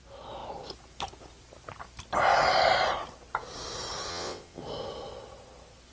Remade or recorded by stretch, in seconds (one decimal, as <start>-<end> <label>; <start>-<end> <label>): 0.0-4.1 recorded; 4.1-4.6 remade; 4.6-5.9 recorded